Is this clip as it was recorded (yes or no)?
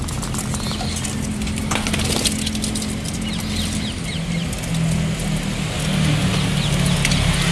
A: yes